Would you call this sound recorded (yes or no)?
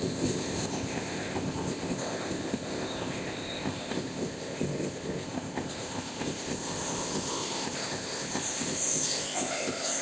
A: no